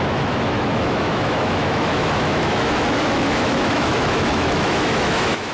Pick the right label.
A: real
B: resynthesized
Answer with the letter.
B